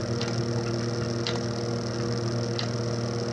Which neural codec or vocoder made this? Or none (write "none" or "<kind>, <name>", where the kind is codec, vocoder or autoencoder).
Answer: none